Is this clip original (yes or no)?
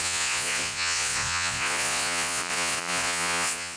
no